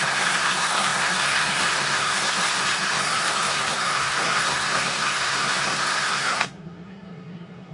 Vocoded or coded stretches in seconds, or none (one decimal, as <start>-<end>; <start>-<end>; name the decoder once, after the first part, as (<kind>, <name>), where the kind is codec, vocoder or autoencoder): 0.0-7.7 (codec, SNAC)